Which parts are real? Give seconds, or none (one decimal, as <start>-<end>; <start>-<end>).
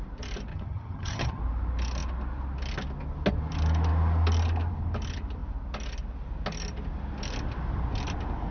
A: 0.0-0.5; 1.4-8.5